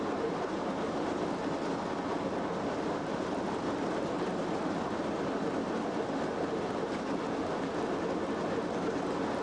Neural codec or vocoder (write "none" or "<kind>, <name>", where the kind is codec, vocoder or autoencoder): none